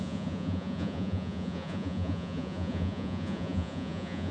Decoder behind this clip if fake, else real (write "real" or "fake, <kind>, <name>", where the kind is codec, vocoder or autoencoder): fake, vocoder, Vocos